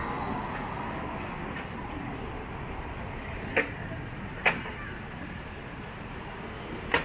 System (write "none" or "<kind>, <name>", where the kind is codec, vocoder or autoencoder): none